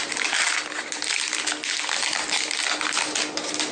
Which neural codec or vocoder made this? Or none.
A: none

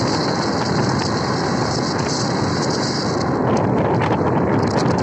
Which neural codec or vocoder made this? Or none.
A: none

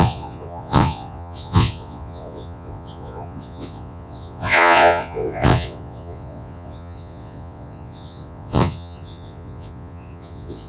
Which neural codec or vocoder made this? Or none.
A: vocoder, Vocos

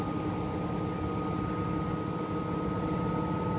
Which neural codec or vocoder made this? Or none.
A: none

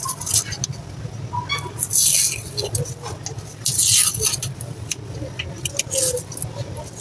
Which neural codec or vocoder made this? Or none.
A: none